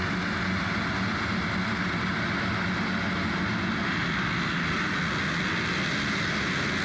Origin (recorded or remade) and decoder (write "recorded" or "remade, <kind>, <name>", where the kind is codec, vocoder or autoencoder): recorded